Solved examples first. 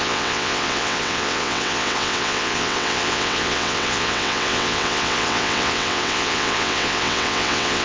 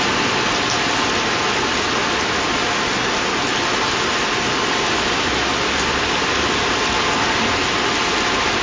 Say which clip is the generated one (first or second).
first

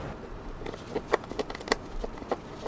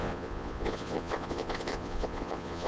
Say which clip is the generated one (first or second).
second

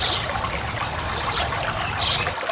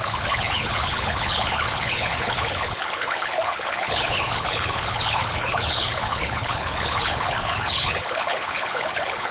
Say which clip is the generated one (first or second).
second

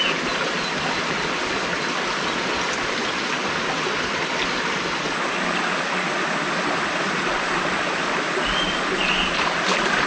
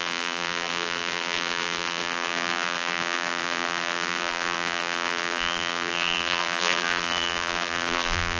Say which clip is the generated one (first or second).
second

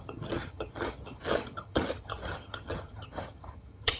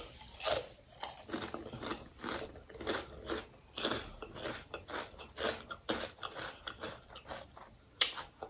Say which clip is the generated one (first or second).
first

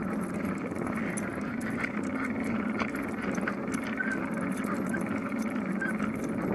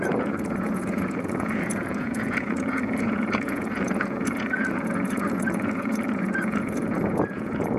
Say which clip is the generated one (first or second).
second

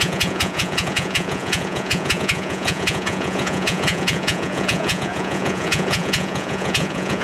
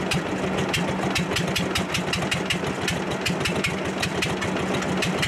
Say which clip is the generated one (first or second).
first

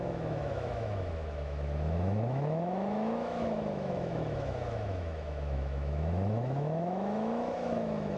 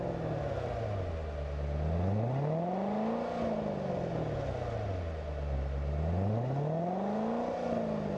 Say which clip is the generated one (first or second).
first